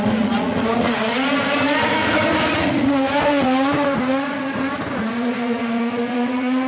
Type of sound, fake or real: fake